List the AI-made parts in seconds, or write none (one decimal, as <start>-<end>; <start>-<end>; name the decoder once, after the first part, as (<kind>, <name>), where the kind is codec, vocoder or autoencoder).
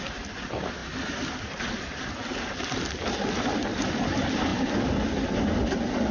none